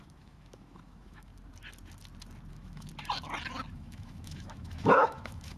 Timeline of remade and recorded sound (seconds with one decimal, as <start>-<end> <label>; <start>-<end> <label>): 0.0-1.3 remade; 1.3-2.5 recorded; 2.5-2.9 remade; 2.9-3.7 recorded; 3.7-5.6 remade